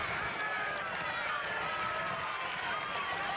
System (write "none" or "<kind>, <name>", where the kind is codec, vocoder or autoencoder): vocoder, BigVGAN v2